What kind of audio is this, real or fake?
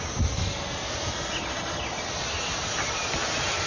real